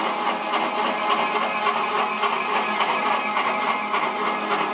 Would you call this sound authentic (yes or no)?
yes